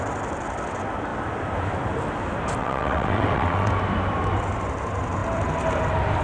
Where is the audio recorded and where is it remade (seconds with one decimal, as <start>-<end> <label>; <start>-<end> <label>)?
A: 0.0-2.6 recorded; 2.6-3.7 remade; 3.7-6.2 recorded